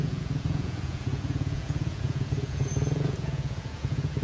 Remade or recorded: remade